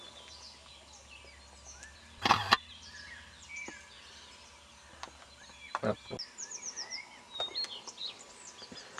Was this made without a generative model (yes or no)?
yes